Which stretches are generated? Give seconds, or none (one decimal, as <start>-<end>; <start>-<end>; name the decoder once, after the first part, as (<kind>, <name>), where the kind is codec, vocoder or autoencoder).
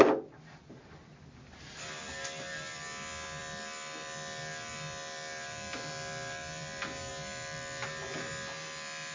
none